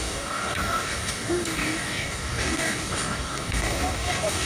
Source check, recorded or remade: remade